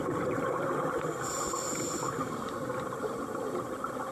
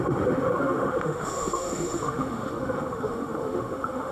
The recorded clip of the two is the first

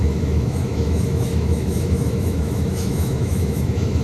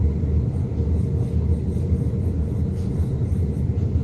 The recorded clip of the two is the second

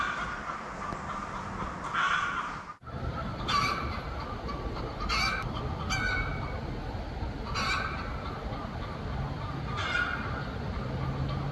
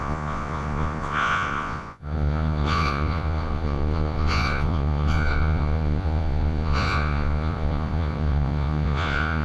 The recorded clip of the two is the first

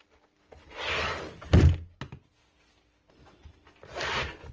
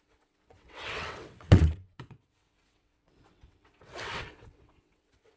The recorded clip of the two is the first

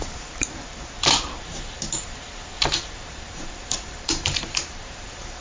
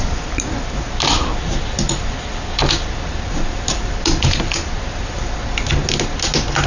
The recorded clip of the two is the second